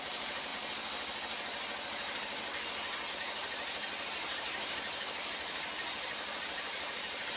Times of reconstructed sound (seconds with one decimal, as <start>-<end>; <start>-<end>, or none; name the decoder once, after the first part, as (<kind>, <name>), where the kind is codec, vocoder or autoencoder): 0.0-0.5 (vocoder, BigVGAN v2); 3.1-7.4